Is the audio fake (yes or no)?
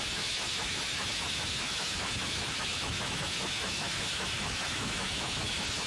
yes